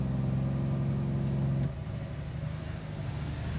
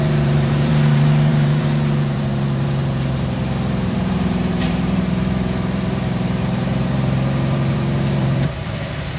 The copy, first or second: second